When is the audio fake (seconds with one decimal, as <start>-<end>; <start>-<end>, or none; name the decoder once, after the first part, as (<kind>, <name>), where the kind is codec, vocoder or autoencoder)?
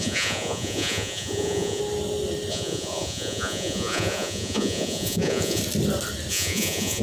0.0-1.8 (vocoder, Vocos); 2.5-5.6; 6.3-7.0